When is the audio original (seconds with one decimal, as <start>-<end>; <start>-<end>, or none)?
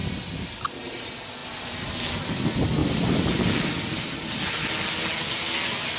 0.0-6.0